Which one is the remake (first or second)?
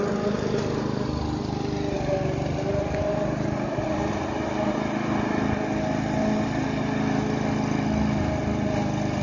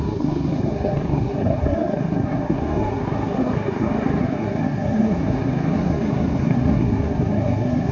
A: second